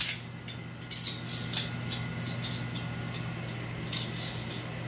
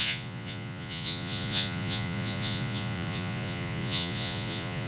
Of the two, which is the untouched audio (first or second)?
first